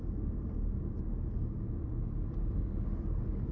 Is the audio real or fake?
real